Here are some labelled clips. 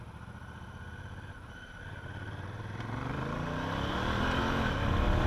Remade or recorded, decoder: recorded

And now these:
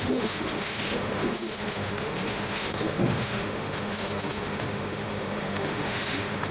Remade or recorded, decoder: remade, autoencoder, DAC-VAE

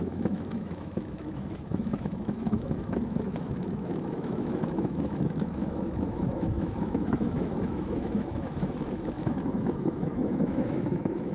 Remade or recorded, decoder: remade, autoencoder, DAC-VAE